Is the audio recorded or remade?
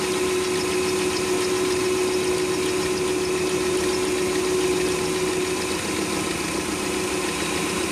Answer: recorded